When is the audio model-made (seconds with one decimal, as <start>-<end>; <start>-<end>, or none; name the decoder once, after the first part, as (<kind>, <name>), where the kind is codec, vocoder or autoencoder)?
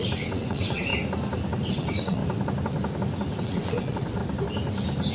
0.0-0.9 (vocoder, WaveNeXt); 1.7-2.2; 3.4-4.2